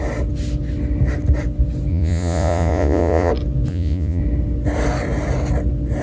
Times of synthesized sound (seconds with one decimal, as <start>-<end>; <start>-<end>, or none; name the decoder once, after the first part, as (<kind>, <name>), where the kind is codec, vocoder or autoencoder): 1.9-3.3 (vocoder, Vocos); 3.7-4.2